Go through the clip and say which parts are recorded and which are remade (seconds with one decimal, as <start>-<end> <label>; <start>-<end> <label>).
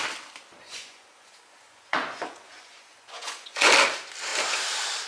0.0-0.6 recorded; 0.6-3.7 remade; 3.7-5.1 recorded